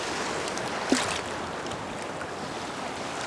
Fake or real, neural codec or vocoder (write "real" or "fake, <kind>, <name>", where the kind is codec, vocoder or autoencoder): real